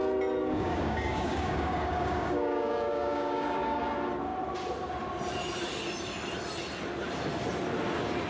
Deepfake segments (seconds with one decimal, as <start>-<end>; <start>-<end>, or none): 0.4-3.8

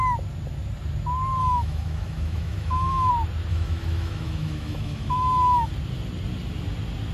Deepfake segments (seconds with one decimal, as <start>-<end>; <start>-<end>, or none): 1.4-3.1; 3.5-5.7

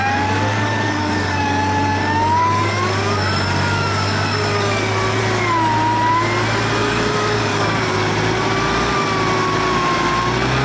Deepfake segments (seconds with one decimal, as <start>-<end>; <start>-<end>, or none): 0.0-5.2; 6.8-7.8

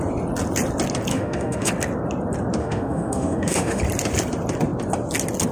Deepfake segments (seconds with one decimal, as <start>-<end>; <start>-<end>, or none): 1.1-1.7; 2.6-3.8